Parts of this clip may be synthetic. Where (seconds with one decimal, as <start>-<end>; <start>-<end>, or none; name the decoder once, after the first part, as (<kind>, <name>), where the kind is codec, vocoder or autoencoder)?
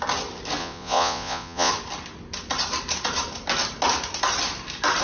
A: 0.6-1.7 (vocoder, Vocos)